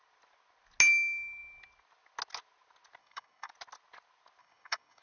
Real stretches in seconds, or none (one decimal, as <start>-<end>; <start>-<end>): 0.0-3.0; 3.5-4.4